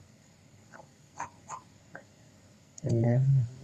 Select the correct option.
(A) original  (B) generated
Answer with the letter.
B